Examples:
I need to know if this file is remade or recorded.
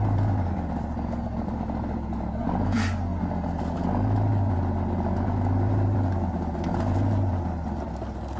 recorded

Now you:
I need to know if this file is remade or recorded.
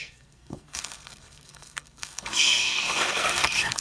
remade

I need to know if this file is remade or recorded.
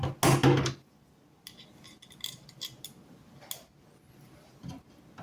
recorded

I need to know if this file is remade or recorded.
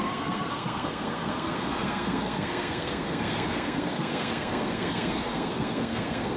remade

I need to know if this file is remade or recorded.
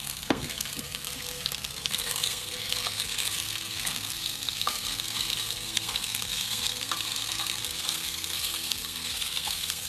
remade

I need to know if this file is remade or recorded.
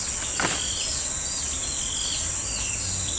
recorded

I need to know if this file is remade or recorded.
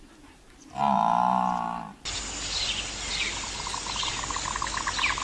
recorded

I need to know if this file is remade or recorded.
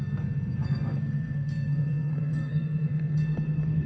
remade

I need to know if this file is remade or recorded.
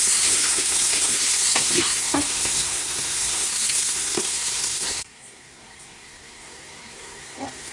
remade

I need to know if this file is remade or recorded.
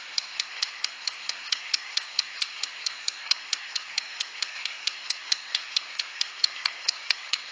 remade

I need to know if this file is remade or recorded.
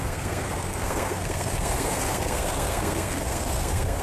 remade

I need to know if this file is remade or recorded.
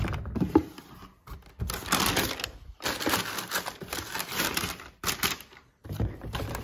recorded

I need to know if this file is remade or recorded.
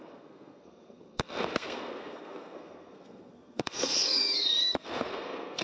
remade